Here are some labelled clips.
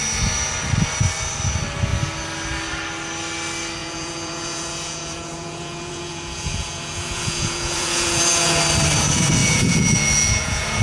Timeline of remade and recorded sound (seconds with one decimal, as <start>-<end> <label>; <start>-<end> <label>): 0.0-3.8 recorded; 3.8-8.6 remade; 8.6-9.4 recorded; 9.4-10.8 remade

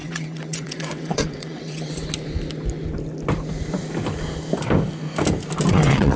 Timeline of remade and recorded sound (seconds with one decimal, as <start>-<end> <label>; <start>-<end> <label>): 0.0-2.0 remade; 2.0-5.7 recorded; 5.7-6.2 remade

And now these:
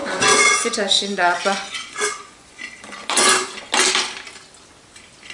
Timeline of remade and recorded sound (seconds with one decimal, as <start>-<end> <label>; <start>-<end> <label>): 0.0-2.6 remade; 2.6-3.0 recorded; 3.0-3.6 remade; 3.6-5.3 recorded